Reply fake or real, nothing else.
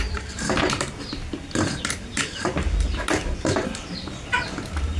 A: real